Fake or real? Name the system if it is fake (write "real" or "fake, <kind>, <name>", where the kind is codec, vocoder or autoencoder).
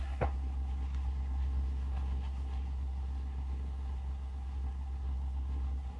fake, codec, SNAC